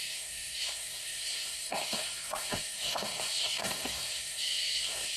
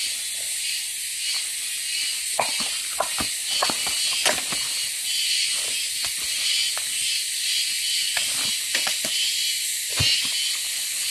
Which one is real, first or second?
second